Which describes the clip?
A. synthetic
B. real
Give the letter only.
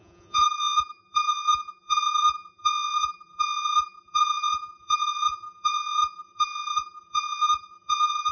A